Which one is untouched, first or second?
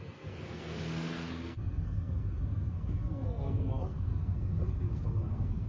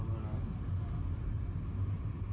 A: second